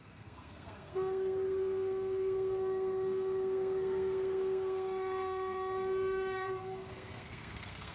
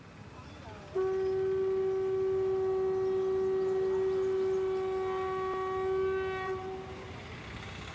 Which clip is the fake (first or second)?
first